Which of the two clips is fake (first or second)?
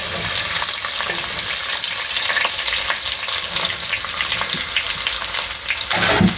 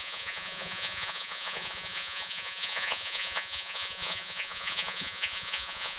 second